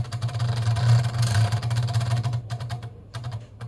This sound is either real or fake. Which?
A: fake